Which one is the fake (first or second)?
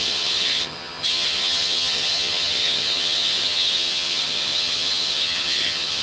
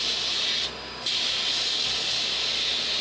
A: first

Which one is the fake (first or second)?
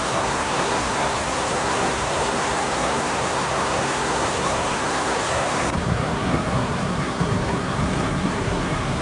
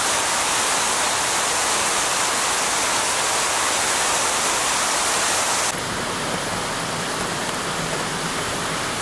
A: first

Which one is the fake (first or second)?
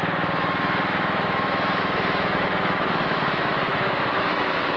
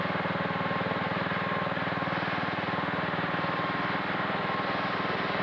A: first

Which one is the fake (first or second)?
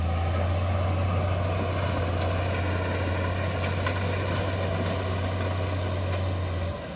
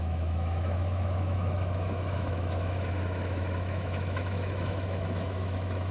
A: second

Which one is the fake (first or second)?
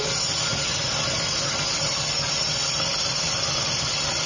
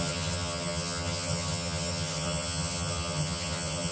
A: second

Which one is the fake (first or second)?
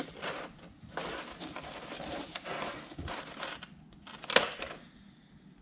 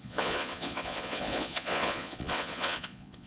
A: second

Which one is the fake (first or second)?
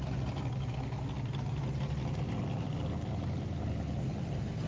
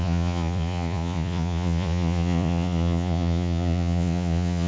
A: second